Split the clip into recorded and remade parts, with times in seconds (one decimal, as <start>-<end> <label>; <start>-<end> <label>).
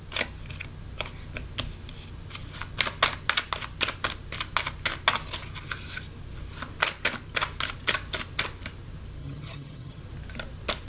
0.0-9.2 recorded; 9.2-10.0 remade; 10.0-10.9 recorded